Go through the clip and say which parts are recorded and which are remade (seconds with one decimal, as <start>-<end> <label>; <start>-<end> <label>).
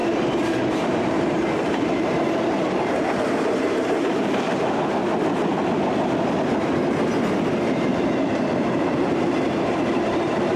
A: 0.0-0.8 recorded; 0.8-5.0 remade; 5.0-7.5 recorded; 7.5-10.6 remade